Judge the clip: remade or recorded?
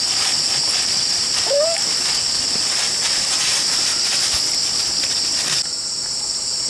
recorded